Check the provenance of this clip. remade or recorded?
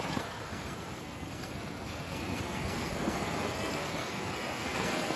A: remade